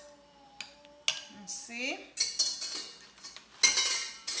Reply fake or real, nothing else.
real